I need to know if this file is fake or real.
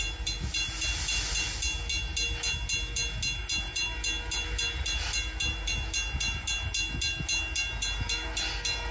real